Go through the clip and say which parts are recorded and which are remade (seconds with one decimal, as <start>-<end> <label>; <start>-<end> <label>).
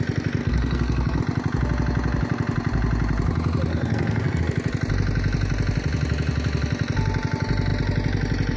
0.0-0.4 recorded; 0.4-1.2 remade; 1.2-3.7 recorded; 3.7-4.4 remade; 4.4-8.6 recorded